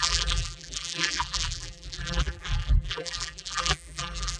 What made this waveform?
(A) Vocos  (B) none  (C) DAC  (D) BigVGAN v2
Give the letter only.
D